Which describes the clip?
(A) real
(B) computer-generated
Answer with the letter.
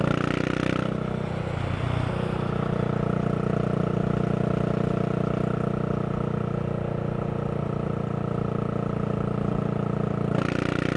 A